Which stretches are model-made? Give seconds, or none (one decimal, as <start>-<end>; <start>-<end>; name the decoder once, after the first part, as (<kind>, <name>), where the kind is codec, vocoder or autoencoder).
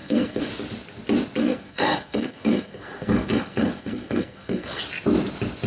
0.0-0.5 (codec, SNAC); 1.4-4.8